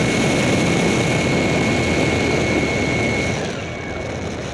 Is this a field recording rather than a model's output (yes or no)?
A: yes